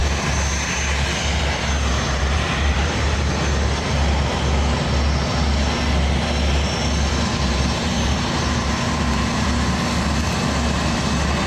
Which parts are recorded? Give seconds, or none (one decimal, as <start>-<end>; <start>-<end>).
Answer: 0.0-1.9; 3.2-7.1; 9.5-11.5